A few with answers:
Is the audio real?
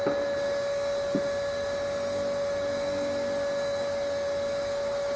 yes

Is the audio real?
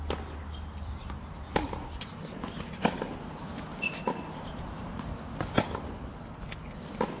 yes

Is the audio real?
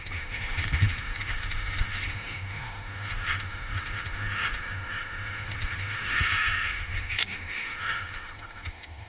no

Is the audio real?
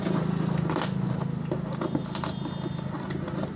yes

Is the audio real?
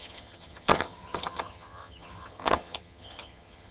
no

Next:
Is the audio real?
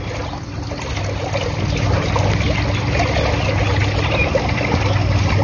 yes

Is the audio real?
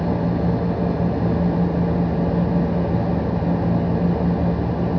yes